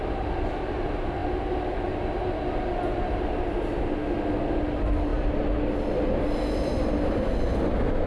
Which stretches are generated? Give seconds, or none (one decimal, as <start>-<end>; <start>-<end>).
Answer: none